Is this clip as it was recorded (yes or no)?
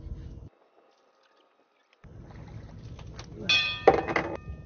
yes